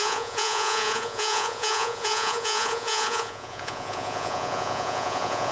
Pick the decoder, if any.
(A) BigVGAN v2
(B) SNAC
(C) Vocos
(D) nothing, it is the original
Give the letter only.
C